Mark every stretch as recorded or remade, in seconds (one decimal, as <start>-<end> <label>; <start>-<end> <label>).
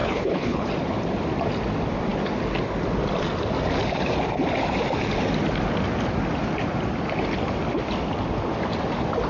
0.0-0.7 remade; 0.7-9.3 recorded